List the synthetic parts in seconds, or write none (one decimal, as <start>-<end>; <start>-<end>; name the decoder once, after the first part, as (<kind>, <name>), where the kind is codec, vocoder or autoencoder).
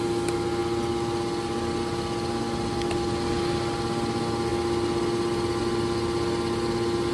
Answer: none